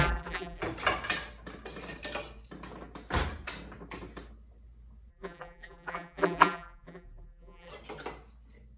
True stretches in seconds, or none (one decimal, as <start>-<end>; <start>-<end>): 0.6-5.1; 7.7-8.8